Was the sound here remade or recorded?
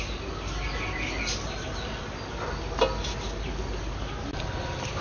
recorded